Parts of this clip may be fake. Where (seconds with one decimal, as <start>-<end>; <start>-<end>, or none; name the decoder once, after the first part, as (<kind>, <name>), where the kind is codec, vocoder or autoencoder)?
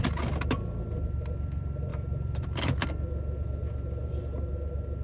none